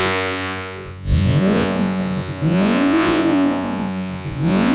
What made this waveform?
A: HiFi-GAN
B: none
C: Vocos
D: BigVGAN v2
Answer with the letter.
C